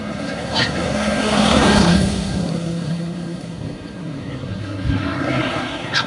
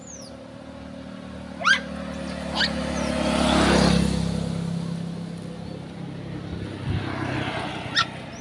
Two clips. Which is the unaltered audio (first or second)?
second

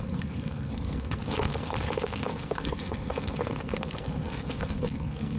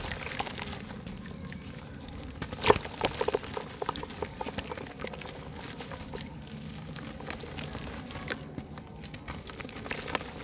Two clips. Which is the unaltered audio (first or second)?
second